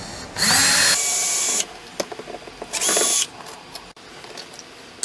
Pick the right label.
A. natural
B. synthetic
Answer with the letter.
A